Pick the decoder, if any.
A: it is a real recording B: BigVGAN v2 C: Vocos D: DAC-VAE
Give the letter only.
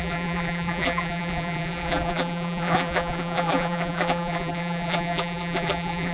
B